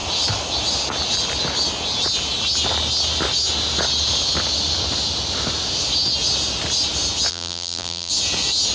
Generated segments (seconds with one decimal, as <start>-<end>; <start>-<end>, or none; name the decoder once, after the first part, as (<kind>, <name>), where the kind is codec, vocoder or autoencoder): 7.3-8.1 (vocoder, BigVGAN v2)